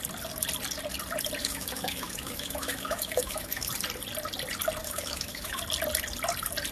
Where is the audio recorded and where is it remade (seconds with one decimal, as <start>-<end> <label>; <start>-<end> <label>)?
0.0-1.4 recorded; 1.4-3.7 remade; 3.7-4.8 recorded; 4.8-5.6 remade; 5.6-6.7 recorded